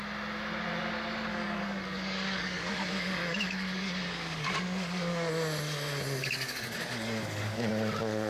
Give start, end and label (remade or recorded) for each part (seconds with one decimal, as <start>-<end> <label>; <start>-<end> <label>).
0.0-1.3 recorded; 1.3-5.3 remade; 5.3-6.2 recorded; 6.2-7.7 remade; 7.7-8.3 recorded

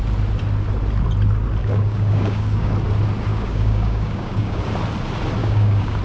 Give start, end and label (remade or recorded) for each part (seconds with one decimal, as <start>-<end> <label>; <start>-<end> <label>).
0.0-1.6 recorded; 1.6-2.7 remade; 2.7-3.3 recorded; 3.3-4.6 remade; 4.6-5.4 recorded; 5.4-6.0 remade